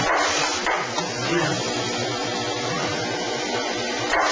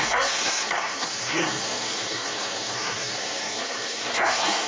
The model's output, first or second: second